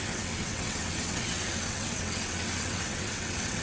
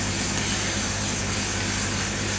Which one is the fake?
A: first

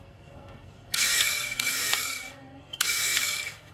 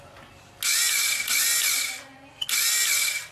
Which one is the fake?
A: first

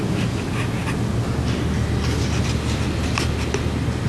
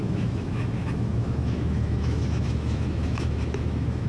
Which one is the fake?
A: second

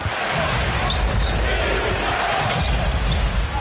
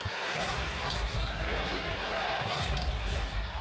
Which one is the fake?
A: second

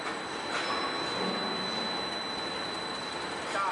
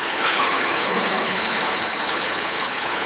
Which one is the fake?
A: second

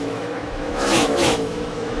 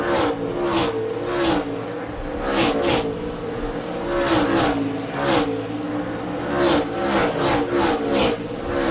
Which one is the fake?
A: first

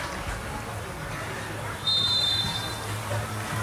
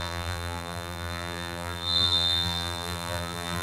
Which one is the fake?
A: second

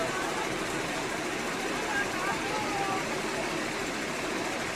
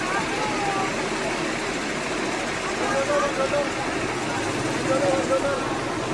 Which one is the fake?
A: first